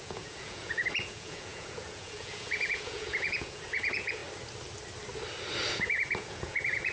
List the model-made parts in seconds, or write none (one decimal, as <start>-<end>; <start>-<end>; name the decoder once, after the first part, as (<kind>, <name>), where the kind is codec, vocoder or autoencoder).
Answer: 0.0-4.2 (vocoder, Vocos); 5.7-6.9